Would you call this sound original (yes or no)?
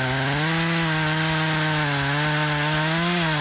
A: yes